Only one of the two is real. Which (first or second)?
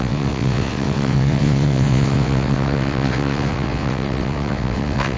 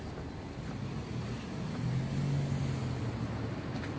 second